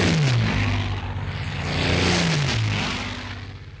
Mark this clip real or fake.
real